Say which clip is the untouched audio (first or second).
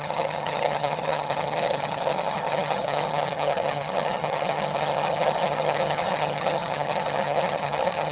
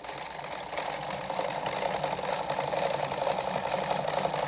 second